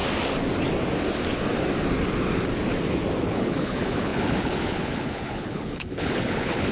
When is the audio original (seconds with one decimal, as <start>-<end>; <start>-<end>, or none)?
0.0-3.2